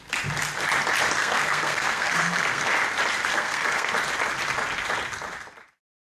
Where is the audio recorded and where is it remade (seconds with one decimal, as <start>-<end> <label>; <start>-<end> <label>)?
0.0-1.2 recorded; 1.2-2.7 remade; 2.7-3.3 recorded; 3.3-3.9 remade; 3.9-6.1 recorded